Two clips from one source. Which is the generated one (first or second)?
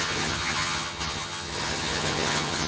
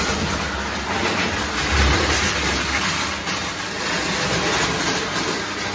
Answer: first